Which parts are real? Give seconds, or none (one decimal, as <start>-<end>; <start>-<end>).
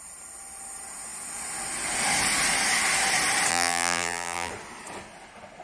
0.0-3.5; 4.5-5.6